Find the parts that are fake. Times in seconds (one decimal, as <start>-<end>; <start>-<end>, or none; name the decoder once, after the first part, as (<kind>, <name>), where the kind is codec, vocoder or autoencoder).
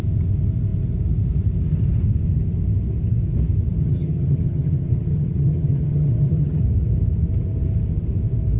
3.8-6.6 (vocoder, HiFi-GAN)